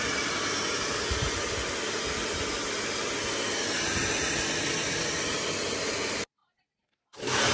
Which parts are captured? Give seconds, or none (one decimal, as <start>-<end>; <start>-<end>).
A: 0.0-7.5